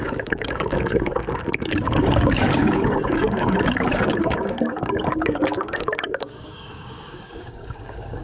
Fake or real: fake